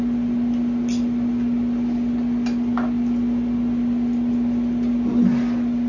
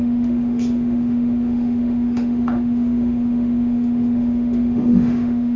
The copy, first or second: second